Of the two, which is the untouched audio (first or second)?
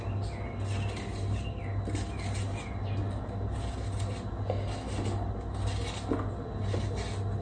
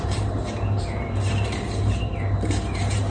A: first